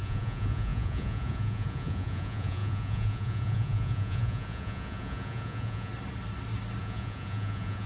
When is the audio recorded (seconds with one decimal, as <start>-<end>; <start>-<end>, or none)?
5.9-6.8